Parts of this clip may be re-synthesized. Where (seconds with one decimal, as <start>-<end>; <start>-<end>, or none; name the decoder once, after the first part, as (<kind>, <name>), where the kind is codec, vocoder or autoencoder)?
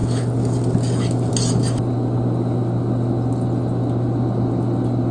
none